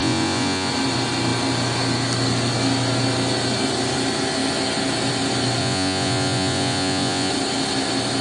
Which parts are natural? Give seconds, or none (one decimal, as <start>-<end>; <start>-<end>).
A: 0.7-5.6; 7.3-8.2